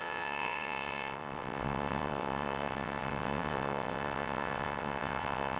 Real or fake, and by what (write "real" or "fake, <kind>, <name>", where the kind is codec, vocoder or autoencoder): fake, vocoder, WaveNeXt